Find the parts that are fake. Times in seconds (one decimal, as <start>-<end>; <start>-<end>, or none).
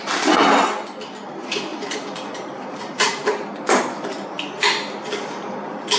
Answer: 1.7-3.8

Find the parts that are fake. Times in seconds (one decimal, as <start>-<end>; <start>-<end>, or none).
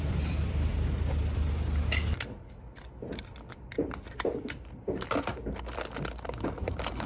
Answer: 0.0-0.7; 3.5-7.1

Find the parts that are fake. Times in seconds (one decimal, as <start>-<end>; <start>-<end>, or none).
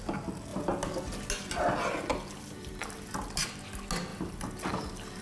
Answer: 2.1-3.2; 4.1-5.2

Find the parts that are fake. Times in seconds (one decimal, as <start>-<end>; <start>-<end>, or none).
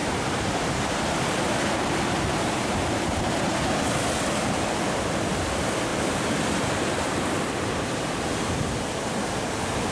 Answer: 0.0-3.6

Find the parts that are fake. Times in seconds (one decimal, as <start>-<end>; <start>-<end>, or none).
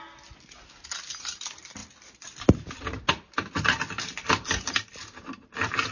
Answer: 1.8-3.0